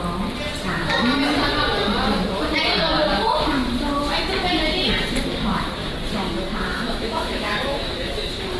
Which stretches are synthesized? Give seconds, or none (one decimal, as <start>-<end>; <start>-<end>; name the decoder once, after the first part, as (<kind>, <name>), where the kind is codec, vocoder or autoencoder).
6.7-8.1 (autoencoder, DAC-VAE)